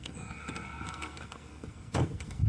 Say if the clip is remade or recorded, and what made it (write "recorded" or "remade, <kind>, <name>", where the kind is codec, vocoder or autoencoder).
remade, codec, SNAC